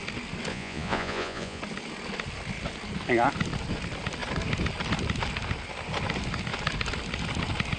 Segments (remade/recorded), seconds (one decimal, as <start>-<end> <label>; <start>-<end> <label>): 0.0-0.5 recorded; 0.5-1.6 remade; 1.6-7.8 recorded